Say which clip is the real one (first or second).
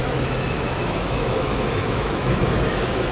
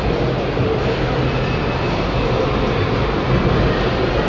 second